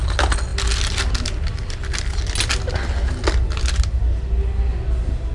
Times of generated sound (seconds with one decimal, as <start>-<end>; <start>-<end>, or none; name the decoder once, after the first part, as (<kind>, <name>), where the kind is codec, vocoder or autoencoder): none

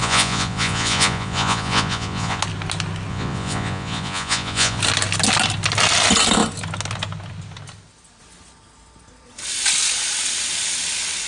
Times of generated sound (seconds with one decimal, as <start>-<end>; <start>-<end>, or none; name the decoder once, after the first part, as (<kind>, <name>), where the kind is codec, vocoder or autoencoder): 0.0-2.4 (vocoder, Vocos); 3.1-4.8

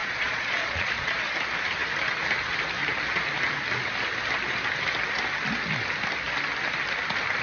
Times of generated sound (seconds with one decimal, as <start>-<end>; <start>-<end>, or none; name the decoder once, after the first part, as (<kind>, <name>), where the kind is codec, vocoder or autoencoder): 0.0-1.1 (vocoder, Vocos)

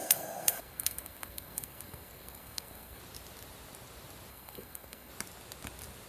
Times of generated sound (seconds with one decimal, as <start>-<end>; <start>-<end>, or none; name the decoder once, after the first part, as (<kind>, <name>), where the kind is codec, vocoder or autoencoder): 0.0-3.0 (codec, SNAC); 4.3-5.1

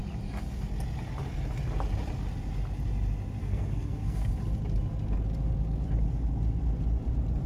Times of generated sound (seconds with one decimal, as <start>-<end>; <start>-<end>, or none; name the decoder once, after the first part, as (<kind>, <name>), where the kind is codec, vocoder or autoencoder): 3.4-4.3 (codec, SNAC)

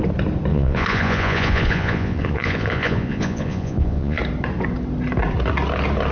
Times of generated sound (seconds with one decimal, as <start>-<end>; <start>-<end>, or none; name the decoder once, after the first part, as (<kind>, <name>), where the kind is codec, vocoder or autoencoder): 0.5-4.2 (vocoder, Vocos)